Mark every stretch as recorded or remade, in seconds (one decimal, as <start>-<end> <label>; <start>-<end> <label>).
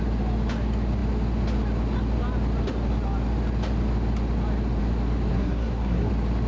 0.0-5.3 recorded; 5.3-6.1 remade; 6.1-6.5 recorded